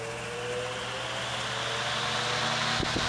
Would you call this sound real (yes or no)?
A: yes